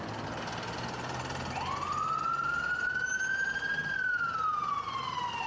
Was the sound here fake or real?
real